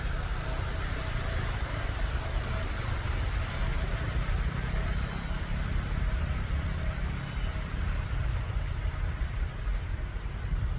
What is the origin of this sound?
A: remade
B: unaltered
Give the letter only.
B